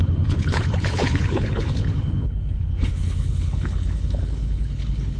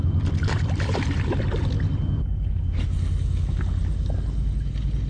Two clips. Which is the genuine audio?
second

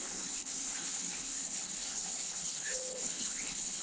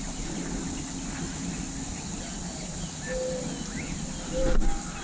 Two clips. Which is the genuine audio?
second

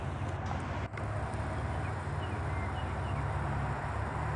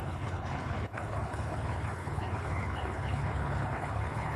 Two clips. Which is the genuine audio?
first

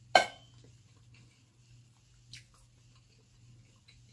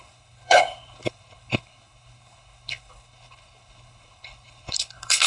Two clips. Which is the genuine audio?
first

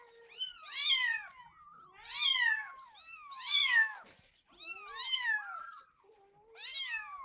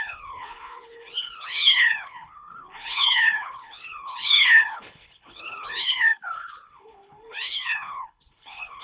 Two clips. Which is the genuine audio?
first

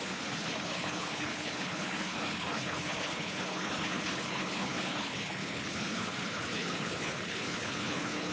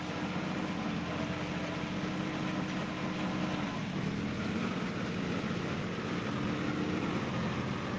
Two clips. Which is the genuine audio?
second